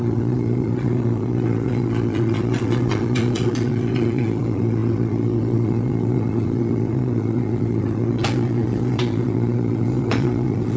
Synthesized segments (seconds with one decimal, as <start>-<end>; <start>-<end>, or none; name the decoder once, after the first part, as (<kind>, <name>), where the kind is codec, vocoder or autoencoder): 0.0-10.8 (vocoder, Vocos)

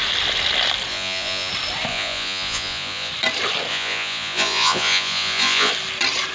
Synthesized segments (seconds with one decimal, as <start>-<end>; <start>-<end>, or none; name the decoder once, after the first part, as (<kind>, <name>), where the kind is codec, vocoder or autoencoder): 0.9-1.5 (vocoder, Vocos); 1.9-3.1; 3.7-5.7

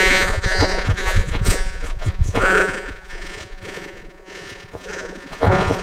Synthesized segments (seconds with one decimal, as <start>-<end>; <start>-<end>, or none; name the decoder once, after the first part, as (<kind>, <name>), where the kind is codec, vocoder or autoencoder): 0.0-5.8 (vocoder, Vocos)

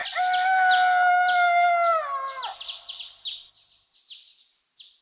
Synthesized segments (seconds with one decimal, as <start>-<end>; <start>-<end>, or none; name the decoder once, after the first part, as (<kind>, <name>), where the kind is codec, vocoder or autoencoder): none